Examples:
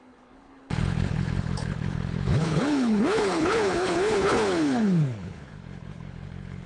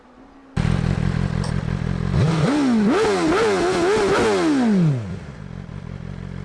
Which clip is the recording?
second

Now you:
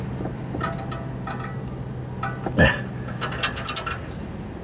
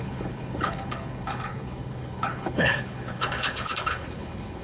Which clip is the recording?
first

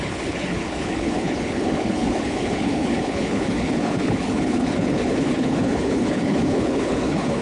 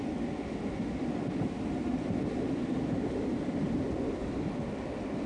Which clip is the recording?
second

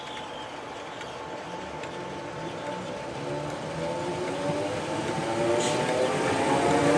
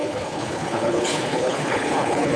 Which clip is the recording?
first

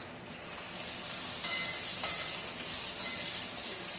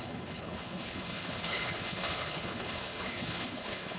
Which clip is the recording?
first